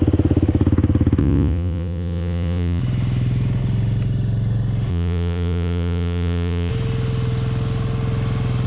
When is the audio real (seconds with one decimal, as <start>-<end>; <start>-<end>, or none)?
0.0-1.2; 2.8-4.9; 6.7-8.7